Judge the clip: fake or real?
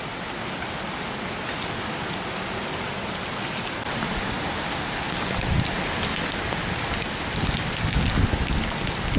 real